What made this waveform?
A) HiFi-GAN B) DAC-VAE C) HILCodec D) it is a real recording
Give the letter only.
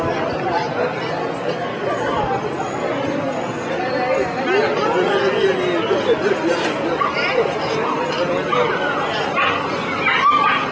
D